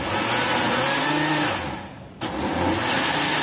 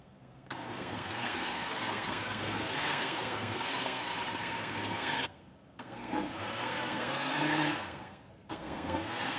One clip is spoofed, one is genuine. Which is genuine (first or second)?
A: first